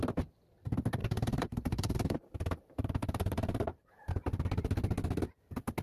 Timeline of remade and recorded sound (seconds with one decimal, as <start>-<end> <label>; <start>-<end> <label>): 0.0-1.0 recorded; 1.0-4.1 remade; 4.1-5.8 recorded